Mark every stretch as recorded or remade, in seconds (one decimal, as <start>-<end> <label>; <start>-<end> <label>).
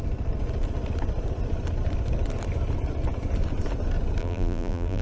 0.0-4.2 recorded; 4.2-5.0 remade